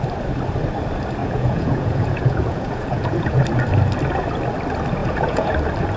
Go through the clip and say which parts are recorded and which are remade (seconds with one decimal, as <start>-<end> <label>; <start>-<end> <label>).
0.0-1.2 recorded; 1.2-3.4 remade; 3.4-5.0 recorded; 5.0-5.5 remade; 5.5-6.0 recorded